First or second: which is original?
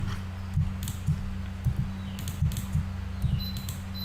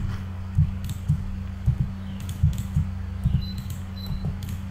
first